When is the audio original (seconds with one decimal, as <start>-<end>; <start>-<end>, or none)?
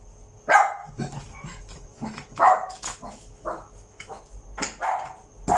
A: 0.0-0.8; 4.2-5.6